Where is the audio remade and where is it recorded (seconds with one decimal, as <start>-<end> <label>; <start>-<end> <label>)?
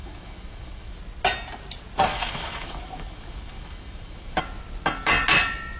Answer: 0.0-1.0 remade; 1.0-2.1 recorded; 2.1-4.4 remade; 4.4-5.8 recorded